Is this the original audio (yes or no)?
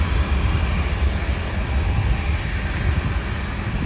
yes